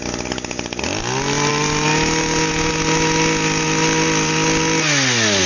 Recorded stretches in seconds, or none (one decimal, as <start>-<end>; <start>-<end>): 0.0-5.5